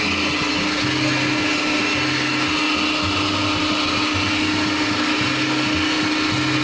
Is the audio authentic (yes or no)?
yes